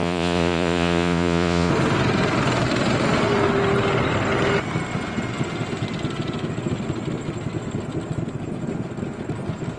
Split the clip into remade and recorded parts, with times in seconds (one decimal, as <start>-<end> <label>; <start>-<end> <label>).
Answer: 0.0-1.7 remade; 1.7-9.8 recorded

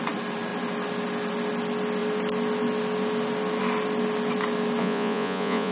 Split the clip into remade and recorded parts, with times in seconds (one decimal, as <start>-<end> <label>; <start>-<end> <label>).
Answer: 0.0-4.8 recorded; 4.8-5.7 remade

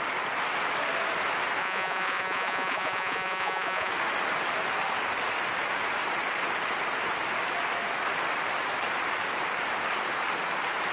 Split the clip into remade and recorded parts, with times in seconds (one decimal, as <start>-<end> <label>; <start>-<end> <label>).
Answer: 0.0-1.6 recorded; 1.6-3.9 remade; 3.9-10.9 recorded

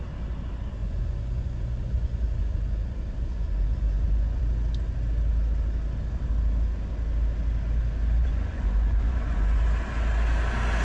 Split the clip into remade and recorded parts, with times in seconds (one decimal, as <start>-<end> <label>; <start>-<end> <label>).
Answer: 0.0-0.8 recorded; 0.8-4.4 remade; 4.4-8.2 recorded; 8.2-9.6 remade; 9.6-10.8 recorded

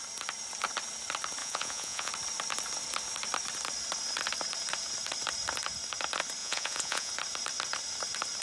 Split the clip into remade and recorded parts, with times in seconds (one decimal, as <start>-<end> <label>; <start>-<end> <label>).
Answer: 0.0-1.4 recorded; 1.4-2.1 remade; 2.1-6.4 recorded; 6.4-7.1 remade; 7.1-8.4 recorded

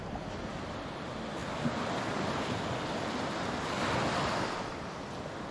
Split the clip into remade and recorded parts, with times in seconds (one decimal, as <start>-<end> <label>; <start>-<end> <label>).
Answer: 0.0-5.5 recorded

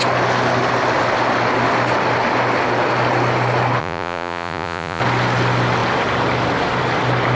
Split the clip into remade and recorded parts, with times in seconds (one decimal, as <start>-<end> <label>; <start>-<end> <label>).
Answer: 0.0-3.8 recorded; 3.8-5.0 remade; 5.0-7.3 recorded

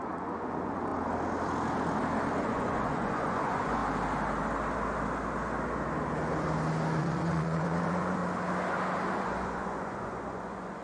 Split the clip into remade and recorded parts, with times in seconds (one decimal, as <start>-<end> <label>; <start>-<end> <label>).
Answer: 0.0-0.9 remade; 0.9-2.4 recorded; 2.4-3.8 remade; 3.8-7.0 recorded; 7.0-8.2 remade; 8.2-9.1 recorded; 9.1-10.8 remade